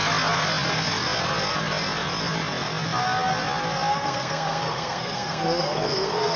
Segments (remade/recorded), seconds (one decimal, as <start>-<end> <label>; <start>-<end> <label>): 0.0-3.9 recorded; 3.9-6.4 remade